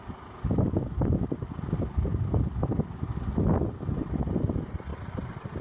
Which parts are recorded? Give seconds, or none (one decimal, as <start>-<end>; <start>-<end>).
0.0-5.6